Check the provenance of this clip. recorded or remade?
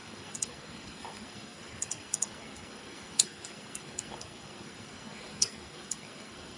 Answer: remade